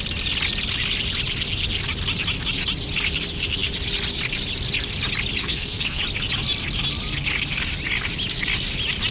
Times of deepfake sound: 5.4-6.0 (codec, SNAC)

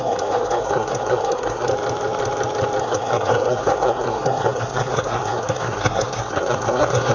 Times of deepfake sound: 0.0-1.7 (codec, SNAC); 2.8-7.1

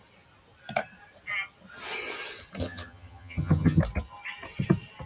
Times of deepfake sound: 2.6-3.8 (vocoder, HiFi-GAN)

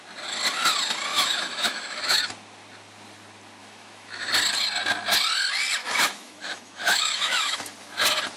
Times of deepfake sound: 1.1-2.2 (autoencoder, DAC-VAE); 3.6-4.3; 5.8-7.7